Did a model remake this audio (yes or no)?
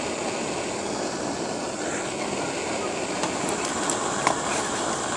no